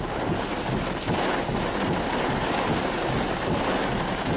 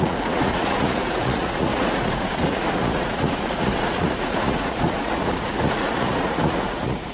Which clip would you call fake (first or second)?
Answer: second